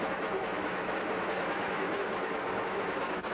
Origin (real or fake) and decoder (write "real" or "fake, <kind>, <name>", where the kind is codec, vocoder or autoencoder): fake, autoencoder, DAC-VAE